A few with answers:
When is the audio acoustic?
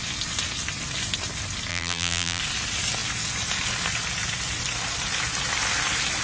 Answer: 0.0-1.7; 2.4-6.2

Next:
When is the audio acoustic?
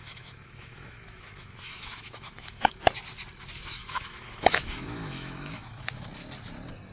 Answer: 2.9-3.8; 5.8-6.9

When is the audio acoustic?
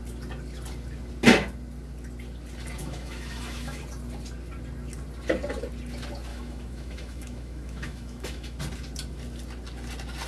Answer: 0.0-2.8; 3.8-6.3; 8.6-10.3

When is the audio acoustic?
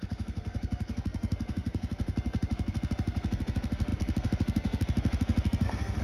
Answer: none